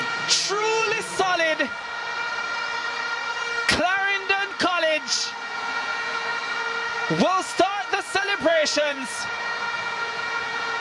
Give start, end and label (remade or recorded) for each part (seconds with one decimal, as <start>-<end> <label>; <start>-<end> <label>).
0.0-1.2 remade; 1.2-5.4 recorded; 5.4-6.3 remade; 6.3-7.1 recorded; 7.1-10.8 remade